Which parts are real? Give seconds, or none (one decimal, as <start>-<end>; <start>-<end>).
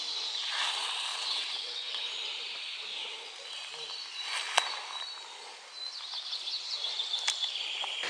0.0-1.1; 2.0-8.1